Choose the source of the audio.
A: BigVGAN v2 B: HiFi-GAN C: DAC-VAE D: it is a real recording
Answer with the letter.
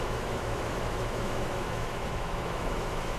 C